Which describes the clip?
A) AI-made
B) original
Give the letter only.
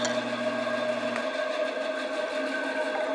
B